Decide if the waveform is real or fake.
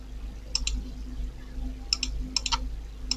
real